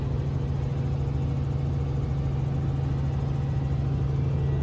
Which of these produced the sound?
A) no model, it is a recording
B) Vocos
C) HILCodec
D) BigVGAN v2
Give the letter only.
A